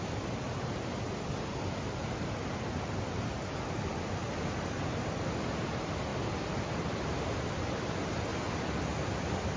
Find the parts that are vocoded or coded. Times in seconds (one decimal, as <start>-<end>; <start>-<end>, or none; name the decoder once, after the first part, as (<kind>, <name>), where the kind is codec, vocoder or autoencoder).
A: none